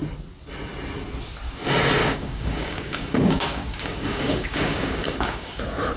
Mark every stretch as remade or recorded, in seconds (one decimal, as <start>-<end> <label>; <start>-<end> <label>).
0.0-2.0 recorded; 2.0-5.6 remade; 5.6-6.0 recorded